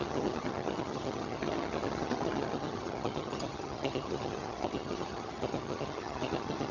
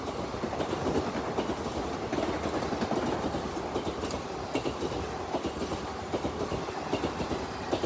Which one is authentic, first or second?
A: second